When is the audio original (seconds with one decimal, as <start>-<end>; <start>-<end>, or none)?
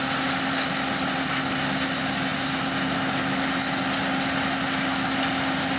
0.0-5.8